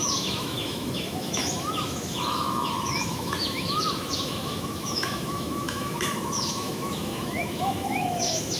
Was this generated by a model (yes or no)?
yes